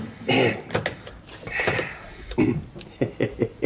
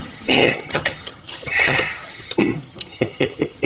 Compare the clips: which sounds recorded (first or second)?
first